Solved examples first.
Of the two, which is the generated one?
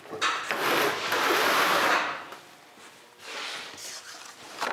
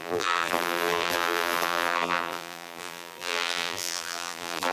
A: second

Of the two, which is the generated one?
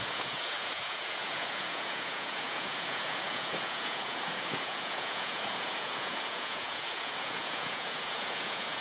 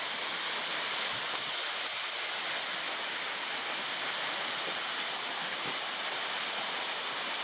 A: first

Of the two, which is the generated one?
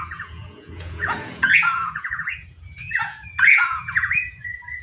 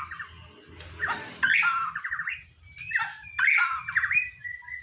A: first